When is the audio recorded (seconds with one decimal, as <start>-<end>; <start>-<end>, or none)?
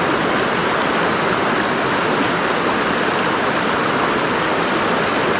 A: 0.0-5.4